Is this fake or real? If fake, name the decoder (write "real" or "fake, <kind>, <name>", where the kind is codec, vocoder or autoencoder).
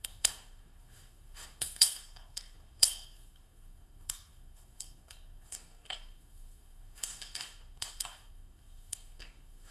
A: fake, codec, SNAC